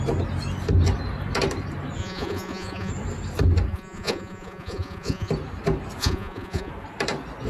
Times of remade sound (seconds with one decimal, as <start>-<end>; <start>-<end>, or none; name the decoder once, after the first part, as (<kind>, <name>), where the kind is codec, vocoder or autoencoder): 2.0-2.9 (vocoder, Vocos); 3.7-5.3; 6.0-6.7